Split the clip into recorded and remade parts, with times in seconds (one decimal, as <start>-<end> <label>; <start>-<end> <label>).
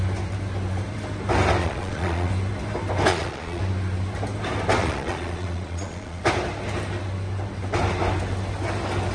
0.0-1.6 recorded; 1.6-2.3 remade; 2.3-3.1 recorded; 3.1-3.6 remade; 3.6-4.8 recorded; 4.8-6.2 remade; 6.2-9.1 recorded